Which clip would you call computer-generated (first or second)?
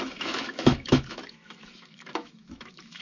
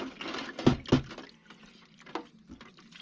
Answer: first